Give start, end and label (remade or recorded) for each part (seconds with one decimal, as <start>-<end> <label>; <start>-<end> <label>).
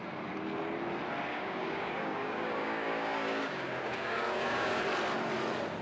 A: 0.0-1.3 recorded; 1.3-4.8 remade; 4.8-5.8 recorded